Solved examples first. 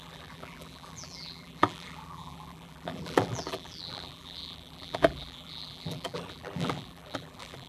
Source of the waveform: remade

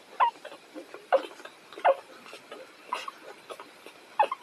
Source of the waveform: recorded